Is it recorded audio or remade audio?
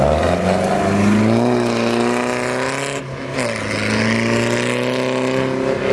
recorded